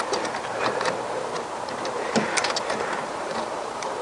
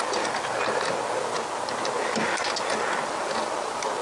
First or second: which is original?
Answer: second